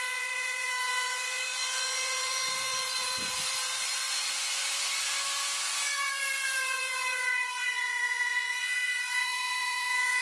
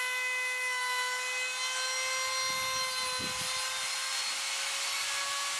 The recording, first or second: second